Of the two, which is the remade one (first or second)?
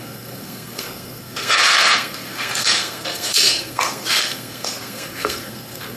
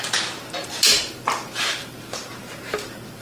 first